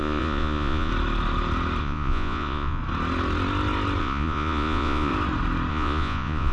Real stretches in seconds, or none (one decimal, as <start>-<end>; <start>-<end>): 0.9-1.8; 2.8-4.0; 5.1-5.7